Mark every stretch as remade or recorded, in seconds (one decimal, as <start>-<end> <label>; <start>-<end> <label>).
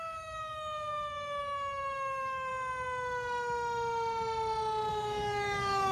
0.0-2.5 remade; 2.5-4.9 recorded; 4.9-5.9 remade